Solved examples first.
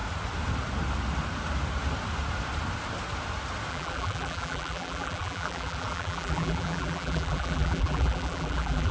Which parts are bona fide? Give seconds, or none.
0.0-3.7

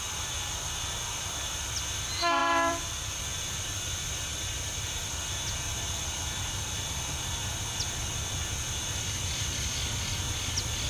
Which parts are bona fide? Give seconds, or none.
0.0-2.4; 3.2-4.3; 5.2-10.9

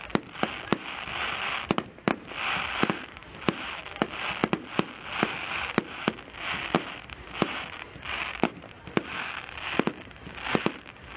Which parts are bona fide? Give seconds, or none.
0.0-3.2; 3.8-11.2

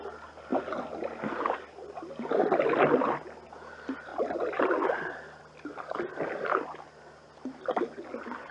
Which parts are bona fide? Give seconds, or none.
0.0-8.5

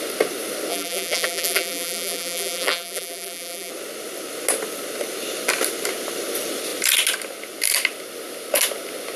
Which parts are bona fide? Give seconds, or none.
0.0-0.7; 3.7-9.2

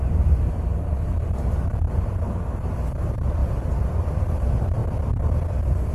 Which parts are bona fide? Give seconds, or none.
3.4-4.2; 4.8-5.9